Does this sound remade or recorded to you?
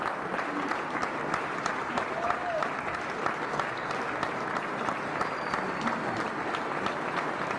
recorded